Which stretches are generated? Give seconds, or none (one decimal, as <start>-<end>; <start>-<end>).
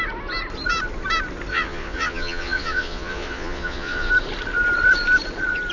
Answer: 1.5-4.1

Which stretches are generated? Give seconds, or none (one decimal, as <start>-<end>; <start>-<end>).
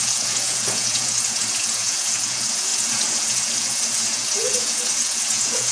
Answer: 0.0-5.7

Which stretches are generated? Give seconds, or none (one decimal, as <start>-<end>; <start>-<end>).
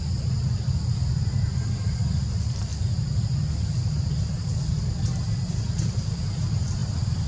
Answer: none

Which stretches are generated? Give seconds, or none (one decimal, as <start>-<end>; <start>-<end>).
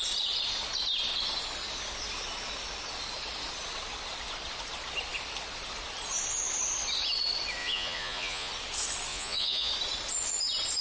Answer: 7.6-8.5; 9.1-9.7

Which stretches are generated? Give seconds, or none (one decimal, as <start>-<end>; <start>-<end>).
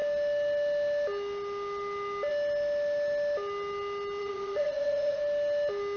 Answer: 4.2-5.2